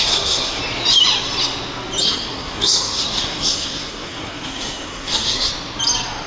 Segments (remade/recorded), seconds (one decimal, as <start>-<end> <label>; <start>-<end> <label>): 0.0-0.6 remade; 0.6-2.0 recorded; 2.0-5.5 remade; 5.5-6.3 recorded